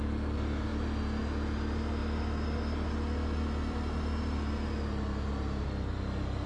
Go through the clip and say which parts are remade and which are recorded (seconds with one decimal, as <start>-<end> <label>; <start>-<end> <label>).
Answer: 0.0-6.5 recorded